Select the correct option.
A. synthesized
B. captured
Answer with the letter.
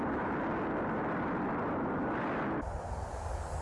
B